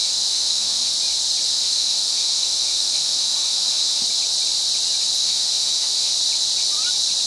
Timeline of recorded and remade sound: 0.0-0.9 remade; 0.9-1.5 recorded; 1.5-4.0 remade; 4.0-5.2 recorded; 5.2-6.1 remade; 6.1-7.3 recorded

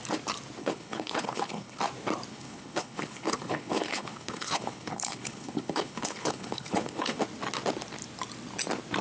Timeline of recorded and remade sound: 0.0-0.6 recorded; 0.6-1.8 remade; 1.8-2.3 recorded; 2.3-7.2 remade; 7.2-9.0 recorded

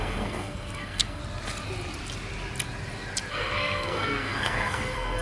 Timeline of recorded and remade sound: 0.0-1.2 remade; 1.2-3.3 recorded; 3.3-5.2 remade

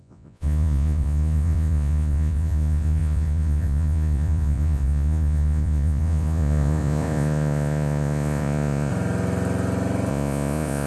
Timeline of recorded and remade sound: 0.0-8.9 remade; 8.9-10.1 recorded; 10.1-10.9 remade

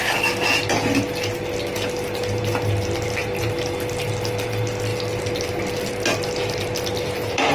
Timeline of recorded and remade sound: 0.0-7.5 recorded

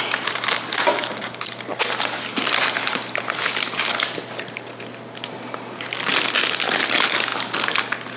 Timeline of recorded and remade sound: 0.0-8.2 recorded

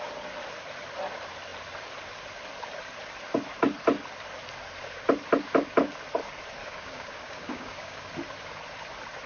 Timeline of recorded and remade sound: 0.0-6.6 recorded; 6.6-8.1 remade; 8.1-9.3 recorded

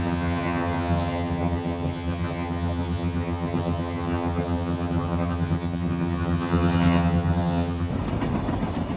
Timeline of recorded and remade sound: 0.0-7.9 remade; 7.9-9.0 recorded